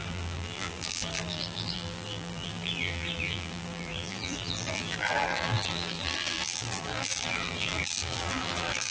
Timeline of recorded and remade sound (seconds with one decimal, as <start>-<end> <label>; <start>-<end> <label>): 0.0-8.9 remade

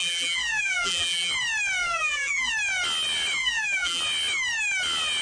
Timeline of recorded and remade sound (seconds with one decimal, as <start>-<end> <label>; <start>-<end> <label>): 0.0-1.3 remade; 1.3-1.8 recorded; 1.8-2.5 remade; 2.5-3.4 recorded; 3.4-4.0 remade; 4.0-5.2 recorded